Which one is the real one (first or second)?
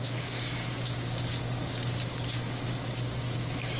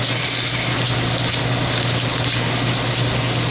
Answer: second